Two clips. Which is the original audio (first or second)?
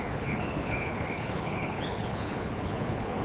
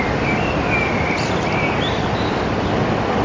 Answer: second